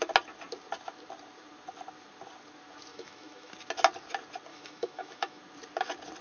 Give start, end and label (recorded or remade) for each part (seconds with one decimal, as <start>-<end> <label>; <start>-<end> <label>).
0.0-2.9 recorded; 2.9-3.5 remade; 3.5-4.5 recorded; 4.5-5.4 remade; 5.4-6.2 recorded